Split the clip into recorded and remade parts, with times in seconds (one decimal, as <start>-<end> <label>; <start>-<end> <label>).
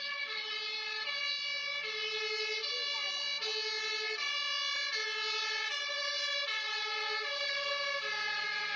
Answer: 0.0-8.8 recorded